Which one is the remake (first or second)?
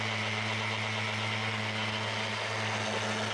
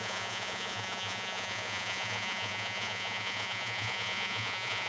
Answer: second